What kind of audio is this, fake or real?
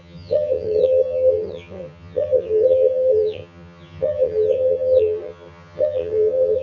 fake